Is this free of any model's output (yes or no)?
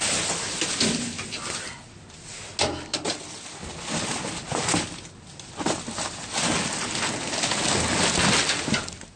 yes